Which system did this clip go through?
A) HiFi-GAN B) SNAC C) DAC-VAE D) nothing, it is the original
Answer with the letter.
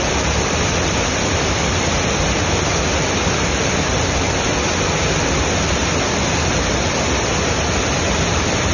D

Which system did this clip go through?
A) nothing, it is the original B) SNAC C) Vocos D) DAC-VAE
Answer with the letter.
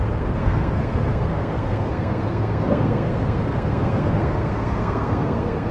B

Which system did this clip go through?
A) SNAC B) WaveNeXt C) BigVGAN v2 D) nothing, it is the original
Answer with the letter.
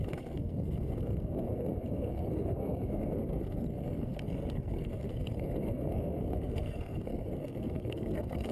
A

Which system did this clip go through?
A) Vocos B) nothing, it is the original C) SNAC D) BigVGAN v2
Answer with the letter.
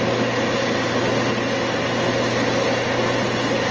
B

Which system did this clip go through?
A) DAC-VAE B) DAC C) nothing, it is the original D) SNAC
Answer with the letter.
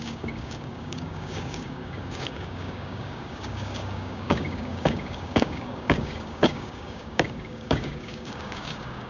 B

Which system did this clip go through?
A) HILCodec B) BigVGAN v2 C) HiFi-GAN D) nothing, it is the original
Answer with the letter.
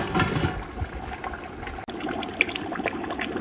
D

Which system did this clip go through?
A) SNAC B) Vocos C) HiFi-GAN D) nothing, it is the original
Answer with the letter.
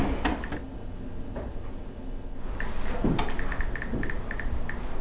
D